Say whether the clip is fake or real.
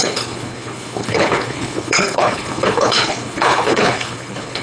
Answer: fake